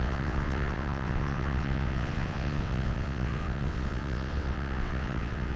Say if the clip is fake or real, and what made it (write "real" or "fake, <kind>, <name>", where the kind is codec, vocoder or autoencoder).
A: fake, vocoder, WaveNeXt